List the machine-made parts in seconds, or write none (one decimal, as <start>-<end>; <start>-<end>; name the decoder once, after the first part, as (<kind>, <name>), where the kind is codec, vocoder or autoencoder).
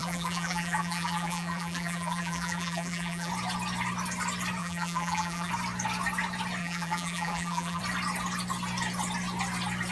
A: 0.0-3.3 (vocoder, BigVGAN v2); 4.6-5.5; 6.6-7.8